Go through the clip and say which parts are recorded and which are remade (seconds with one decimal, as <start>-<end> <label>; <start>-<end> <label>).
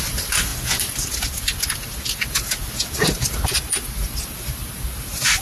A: 0.0-0.5 remade; 0.5-3.7 recorded; 3.7-5.4 remade